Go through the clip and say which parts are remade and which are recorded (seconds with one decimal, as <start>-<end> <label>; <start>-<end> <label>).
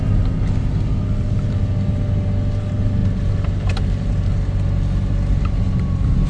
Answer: 0.0-6.3 recorded